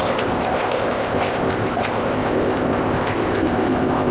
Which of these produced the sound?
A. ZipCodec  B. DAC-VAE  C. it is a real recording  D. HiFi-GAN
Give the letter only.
A